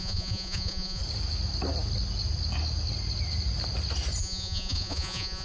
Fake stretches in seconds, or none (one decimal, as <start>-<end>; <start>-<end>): 0.0-1.0; 4.2-5.4